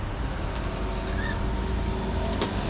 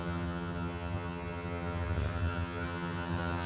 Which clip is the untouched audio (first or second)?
first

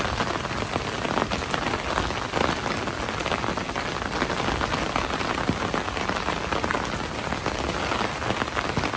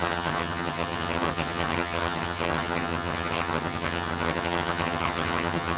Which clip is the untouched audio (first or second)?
first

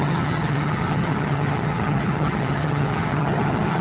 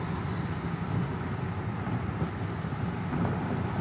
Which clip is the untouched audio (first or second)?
second